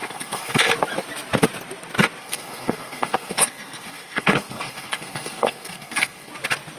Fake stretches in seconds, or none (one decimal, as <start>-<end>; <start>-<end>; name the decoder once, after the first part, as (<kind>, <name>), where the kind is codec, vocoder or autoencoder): 0.0-0.7 (codec, SNAC); 2.2-6.3